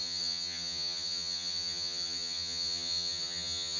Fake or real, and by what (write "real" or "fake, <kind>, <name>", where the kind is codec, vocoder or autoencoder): fake, vocoder, HiFi-GAN